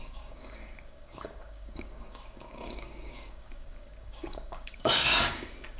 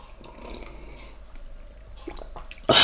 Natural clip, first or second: second